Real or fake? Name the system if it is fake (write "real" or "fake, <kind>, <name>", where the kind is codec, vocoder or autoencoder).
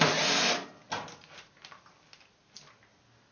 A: real